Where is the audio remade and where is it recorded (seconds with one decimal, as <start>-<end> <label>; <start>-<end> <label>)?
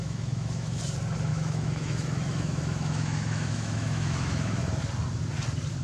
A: 0.0-0.8 remade; 0.8-1.3 recorded; 1.3-4.8 remade; 4.8-5.8 recorded